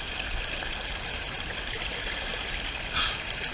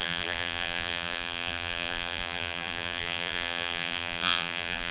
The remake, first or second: second